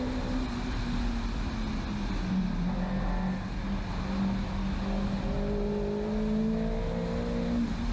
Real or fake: real